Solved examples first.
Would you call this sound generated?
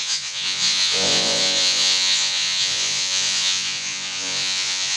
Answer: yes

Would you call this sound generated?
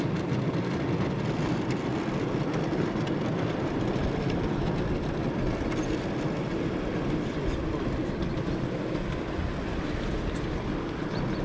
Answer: no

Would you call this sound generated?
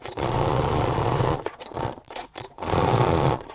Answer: yes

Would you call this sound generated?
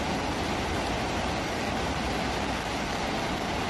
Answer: no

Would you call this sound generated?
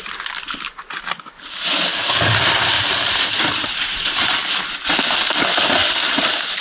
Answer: no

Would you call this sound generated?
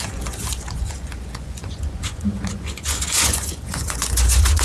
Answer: yes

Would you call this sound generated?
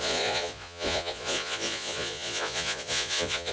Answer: yes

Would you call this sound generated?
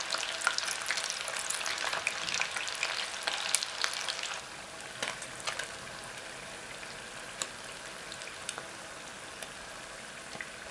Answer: no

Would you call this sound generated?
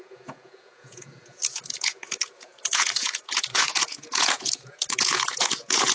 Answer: yes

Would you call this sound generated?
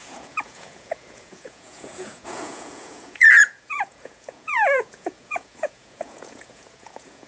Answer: yes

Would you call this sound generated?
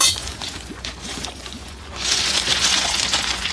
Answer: yes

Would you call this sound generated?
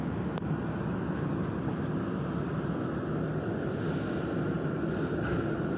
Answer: no